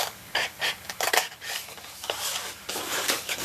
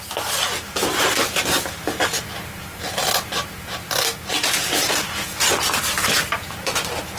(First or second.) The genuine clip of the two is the second